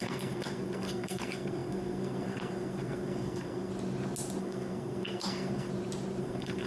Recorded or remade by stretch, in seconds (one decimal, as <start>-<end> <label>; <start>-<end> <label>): 0.0-3.7 remade; 3.7-4.4 recorded; 4.4-5.7 remade; 5.7-6.2 recorded; 6.2-6.7 remade